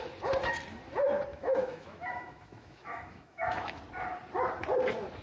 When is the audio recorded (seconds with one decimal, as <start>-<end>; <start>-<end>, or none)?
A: 0.0-1.3; 3.8-5.2